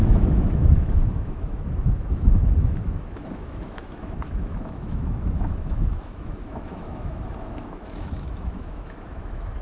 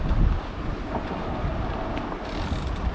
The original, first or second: second